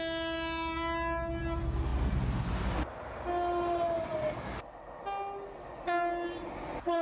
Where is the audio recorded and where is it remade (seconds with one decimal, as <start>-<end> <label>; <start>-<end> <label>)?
0.0-7.0 recorded